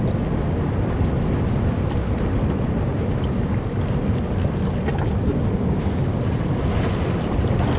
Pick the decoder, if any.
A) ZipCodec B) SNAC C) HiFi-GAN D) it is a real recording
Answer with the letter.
D